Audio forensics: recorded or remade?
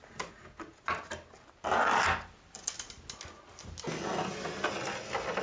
recorded